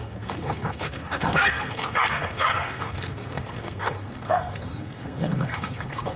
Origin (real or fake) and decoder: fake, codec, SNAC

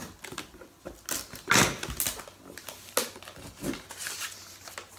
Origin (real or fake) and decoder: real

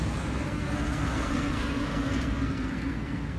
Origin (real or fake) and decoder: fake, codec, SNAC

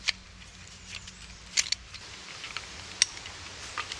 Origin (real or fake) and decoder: real